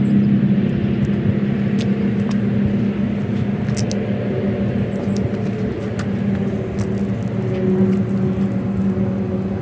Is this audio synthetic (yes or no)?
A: no